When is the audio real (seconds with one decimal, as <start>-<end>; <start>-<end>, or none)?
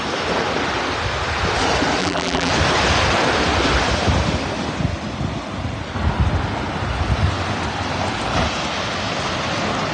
0.0-2.0; 2.5-9.9